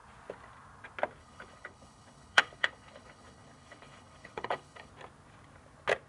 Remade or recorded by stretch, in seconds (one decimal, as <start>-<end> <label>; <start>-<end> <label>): 0.0-1.2 recorded; 1.2-4.9 remade; 4.9-6.1 recorded